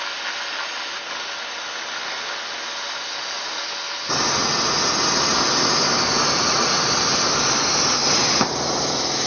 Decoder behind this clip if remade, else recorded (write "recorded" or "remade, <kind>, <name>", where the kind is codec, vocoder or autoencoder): recorded